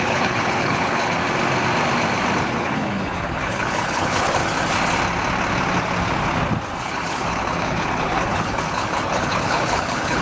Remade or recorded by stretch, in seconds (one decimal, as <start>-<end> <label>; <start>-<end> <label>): 0.0-1.2 remade; 1.2-2.5 recorded; 2.5-4.4 remade; 4.4-6.8 recorded; 6.8-10.2 remade